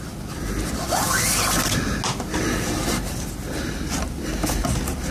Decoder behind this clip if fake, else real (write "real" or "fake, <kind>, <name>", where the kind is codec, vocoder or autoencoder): real